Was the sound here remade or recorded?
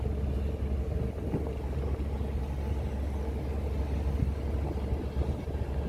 recorded